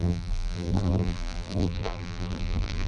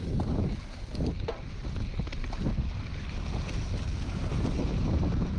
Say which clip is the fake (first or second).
first